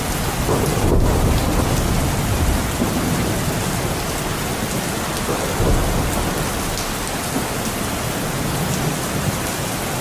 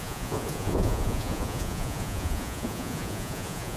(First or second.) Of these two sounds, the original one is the first